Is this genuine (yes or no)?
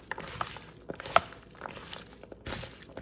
yes